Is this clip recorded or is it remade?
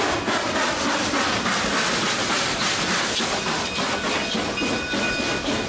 recorded